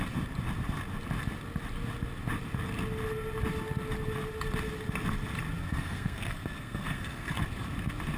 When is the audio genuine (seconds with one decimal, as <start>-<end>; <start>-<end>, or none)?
0.0-5.6; 7.4-8.2